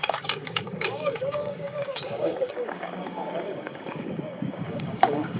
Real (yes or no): no